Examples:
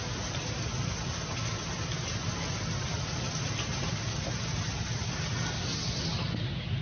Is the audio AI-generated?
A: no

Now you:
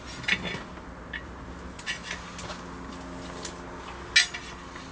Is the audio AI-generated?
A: no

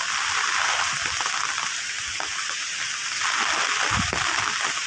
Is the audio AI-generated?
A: no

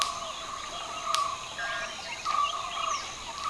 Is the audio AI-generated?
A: no